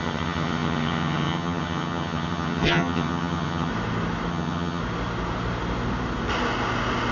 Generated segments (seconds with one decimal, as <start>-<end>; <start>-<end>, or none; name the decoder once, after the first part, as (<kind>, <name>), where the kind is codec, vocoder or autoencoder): 0.0-3.7 (vocoder, HiFi-GAN); 4.3-4.8